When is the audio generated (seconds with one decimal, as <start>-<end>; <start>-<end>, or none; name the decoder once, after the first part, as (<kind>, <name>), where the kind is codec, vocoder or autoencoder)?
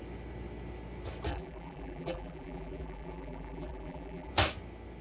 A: 1.3-4.3 (vocoder, BigVGAN v2)